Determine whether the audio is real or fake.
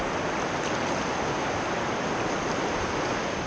real